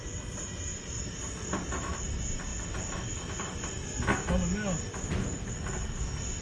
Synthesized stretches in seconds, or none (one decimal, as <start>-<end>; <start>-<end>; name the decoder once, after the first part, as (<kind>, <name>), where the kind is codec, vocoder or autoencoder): none

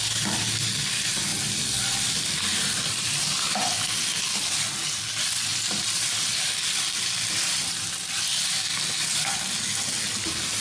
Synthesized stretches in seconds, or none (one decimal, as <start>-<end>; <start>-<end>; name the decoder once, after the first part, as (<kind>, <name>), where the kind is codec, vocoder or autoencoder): 1.3-4.3 (vocoder, BigVGAN v2); 5.5-8.4